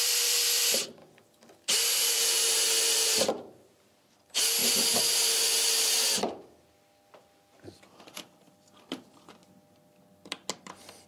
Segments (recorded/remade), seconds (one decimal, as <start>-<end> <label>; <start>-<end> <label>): 0.0-1.0 remade; 1.0-1.8 recorded; 1.8-4.6 remade; 4.6-7.6 recorded; 7.6-9.4 remade; 9.4-10.6 recorded; 10.6-11.1 remade